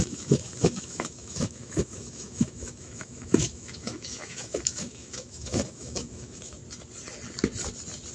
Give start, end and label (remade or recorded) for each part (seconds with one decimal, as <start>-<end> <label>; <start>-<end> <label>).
0.0-6.6 remade; 6.6-8.1 recorded